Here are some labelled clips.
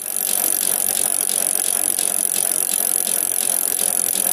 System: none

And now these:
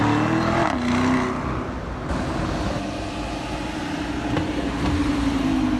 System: none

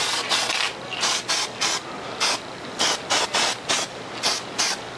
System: none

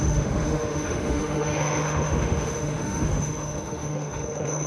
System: autoencoder, DAC-VAE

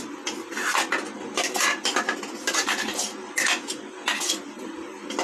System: none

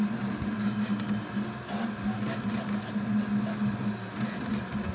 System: none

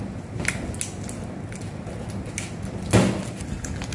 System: none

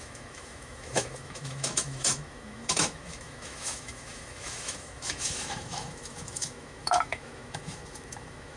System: autoencoder, DAC-VAE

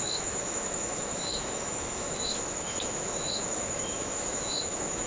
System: autoencoder, DAC-VAE